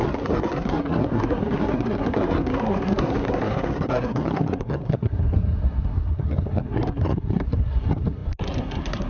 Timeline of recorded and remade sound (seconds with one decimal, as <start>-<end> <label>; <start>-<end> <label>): 0.0-9.1 remade